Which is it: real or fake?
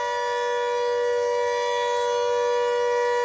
real